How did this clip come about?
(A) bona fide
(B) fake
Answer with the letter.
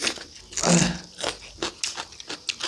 A